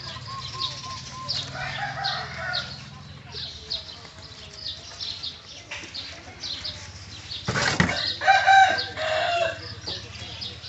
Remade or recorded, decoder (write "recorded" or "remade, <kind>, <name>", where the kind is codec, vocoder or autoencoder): recorded